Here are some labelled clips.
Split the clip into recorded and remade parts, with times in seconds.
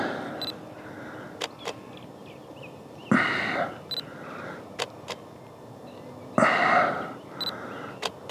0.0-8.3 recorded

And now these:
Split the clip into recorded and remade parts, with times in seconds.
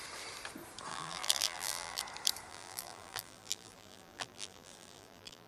0.0-0.9 recorded; 0.9-2.0 remade; 2.0-2.5 recorded; 2.5-5.5 remade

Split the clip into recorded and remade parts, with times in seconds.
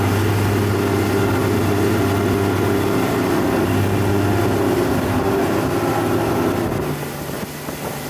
0.0-8.1 recorded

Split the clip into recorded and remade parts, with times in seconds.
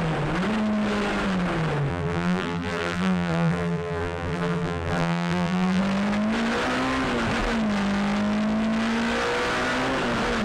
0.0-1.9 recorded; 1.9-5.8 remade; 5.8-10.4 recorded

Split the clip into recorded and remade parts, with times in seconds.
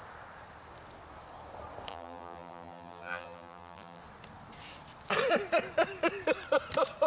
0.0-1.9 recorded; 1.9-4.0 remade; 4.0-7.1 recorded